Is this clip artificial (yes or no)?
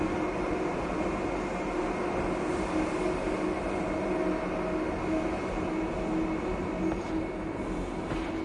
no